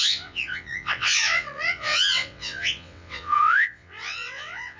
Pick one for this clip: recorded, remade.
remade